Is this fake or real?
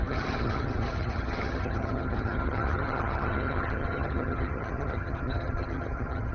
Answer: fake